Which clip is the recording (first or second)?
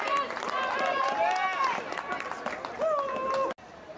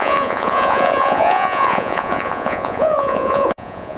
first